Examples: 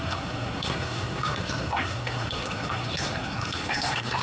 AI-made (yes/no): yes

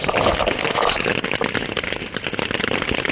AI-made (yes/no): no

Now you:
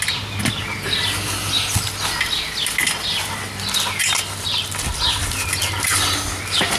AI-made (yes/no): no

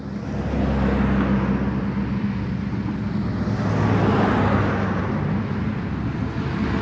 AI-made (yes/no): no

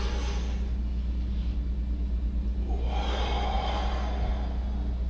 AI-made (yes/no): no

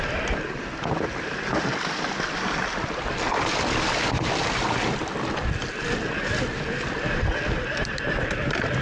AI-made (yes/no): no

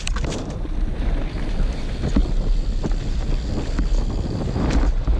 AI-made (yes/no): no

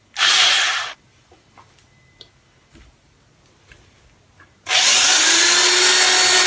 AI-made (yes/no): no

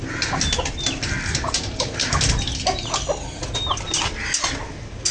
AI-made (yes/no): no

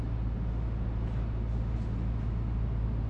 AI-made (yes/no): no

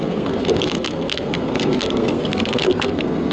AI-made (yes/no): yes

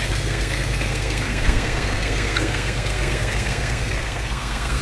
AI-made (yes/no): yes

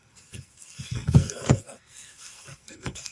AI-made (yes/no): yes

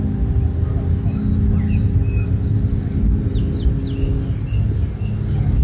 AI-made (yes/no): no